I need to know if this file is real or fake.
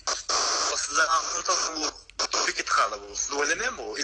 real